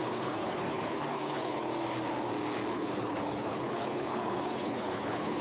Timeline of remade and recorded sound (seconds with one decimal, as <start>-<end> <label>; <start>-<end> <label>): 0.0-1.7 remade; 1.7-2.7 recorded; 2.7-5.4 remade